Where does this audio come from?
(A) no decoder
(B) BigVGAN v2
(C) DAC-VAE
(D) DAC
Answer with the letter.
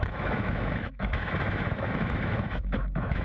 C